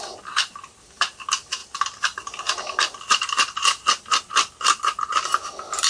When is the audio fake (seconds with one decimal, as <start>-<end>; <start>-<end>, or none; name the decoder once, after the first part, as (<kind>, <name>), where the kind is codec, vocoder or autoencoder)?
none